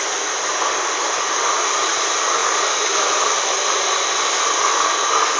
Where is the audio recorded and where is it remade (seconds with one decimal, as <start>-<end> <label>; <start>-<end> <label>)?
0.0-5.4 recorded